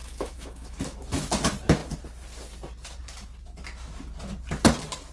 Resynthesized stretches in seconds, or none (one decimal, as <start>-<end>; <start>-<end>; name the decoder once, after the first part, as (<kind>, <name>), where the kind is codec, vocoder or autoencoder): 0.0-1.3 (autoencoder, DAC-VAE)